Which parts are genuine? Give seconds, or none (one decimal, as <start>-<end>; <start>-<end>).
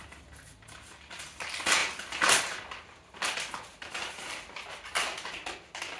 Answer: 0.0-6.0